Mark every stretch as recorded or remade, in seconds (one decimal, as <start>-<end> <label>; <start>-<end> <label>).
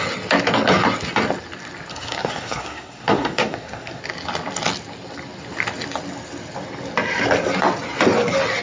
0.0-1.9 recorded; 1.9-4.0 remade; 4.0-8.6 recorded